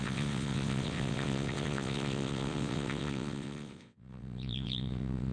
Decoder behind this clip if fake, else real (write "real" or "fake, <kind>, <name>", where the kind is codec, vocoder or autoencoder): fake, vocoder, WaveNeXt